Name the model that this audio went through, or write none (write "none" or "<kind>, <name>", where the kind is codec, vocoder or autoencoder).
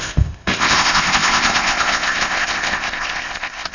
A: codec, ZipCodec